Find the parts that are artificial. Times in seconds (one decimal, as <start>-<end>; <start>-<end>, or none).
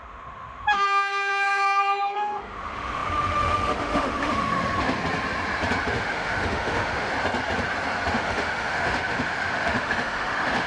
0.0-5.0; 5.9-7.1; 8.1-10.7